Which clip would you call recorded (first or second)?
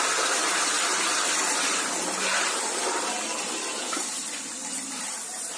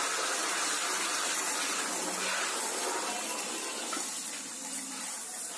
second